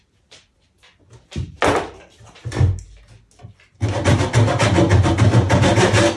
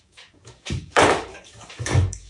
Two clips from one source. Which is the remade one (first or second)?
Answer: second